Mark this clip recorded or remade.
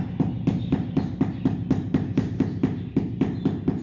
recorded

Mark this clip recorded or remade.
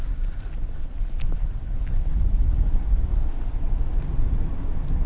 recorded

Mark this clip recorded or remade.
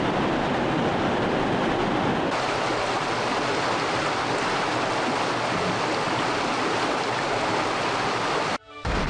recorded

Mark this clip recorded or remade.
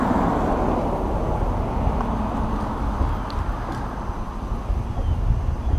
recorded